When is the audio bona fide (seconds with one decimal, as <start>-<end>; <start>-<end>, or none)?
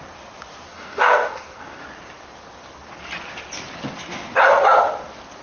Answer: 0.0-0.7; 1.8-5.4